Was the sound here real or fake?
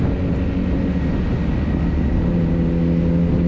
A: real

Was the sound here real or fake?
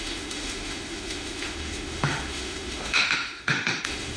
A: fake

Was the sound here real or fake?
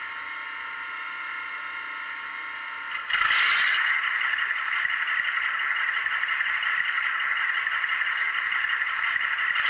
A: real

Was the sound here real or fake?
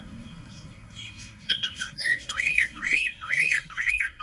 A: fake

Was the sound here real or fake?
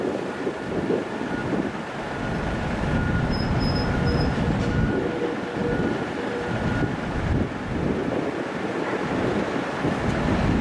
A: real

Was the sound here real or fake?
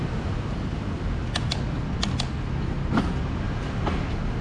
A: real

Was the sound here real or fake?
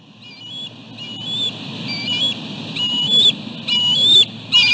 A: real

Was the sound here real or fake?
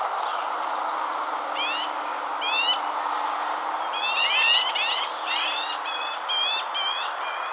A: real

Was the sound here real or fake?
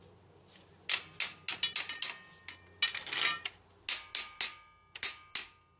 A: real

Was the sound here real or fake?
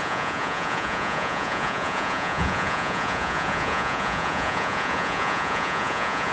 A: fake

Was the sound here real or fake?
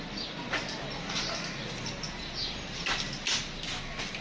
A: real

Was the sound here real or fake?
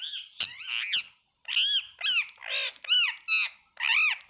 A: real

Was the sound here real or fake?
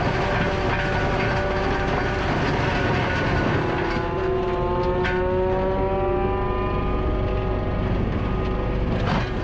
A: real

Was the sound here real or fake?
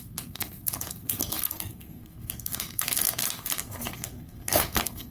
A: fake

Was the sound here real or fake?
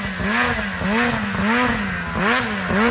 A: real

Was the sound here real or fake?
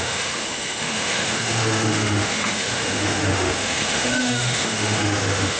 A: fake